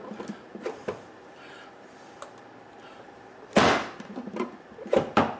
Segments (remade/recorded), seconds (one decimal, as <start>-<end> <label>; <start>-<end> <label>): 0.0-5.4 recorded